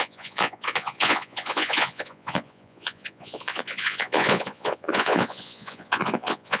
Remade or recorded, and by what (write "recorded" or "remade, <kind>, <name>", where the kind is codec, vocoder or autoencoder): remade, vocoder, Vocos